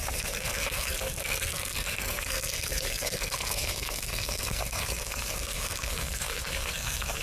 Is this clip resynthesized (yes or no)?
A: yes